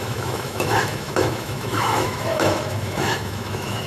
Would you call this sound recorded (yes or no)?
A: no